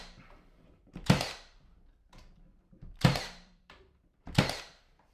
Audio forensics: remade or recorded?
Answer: remade